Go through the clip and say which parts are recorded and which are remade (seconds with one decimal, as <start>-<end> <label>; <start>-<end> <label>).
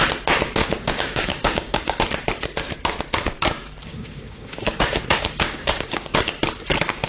0.0-0.6 recorded; 0.6-2.0 remade; 2.0-3.9 recorded; 3.9-6.3 remade; 6.3-7.1 recorded